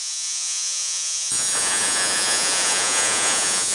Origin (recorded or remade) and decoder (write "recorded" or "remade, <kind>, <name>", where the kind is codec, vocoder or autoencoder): remade, vocoder, Vocos